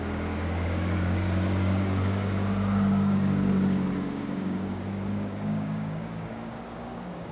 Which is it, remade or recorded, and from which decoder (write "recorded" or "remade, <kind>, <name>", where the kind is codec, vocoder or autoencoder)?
remade, codec, DAC